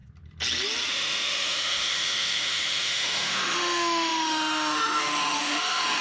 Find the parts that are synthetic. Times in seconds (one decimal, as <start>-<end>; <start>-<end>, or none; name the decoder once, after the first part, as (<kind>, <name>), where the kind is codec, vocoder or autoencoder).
0.9-6.0 (autoencoder, DAC-VAE)